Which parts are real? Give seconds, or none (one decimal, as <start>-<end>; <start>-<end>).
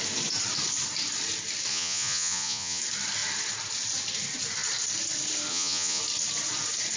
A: 0.0-1.7; 2.8-5.5; 6.0-7.0